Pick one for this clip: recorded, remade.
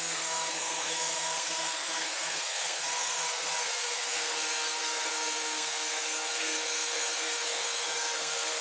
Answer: remade